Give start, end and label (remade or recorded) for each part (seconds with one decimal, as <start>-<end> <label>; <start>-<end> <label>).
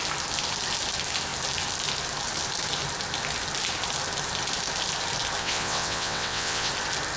0.0-5.4 recorded; 5.4-6.7 remade; 6.7-7.2 recorded